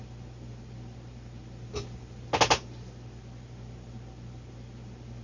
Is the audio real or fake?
real